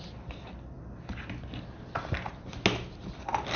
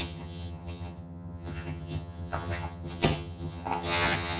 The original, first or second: first